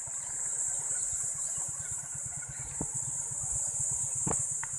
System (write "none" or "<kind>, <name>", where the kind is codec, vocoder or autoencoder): vocoder, BigVGAN v2